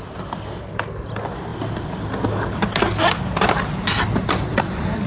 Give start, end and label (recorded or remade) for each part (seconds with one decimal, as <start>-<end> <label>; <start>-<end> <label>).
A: 0.0-5.1 recorded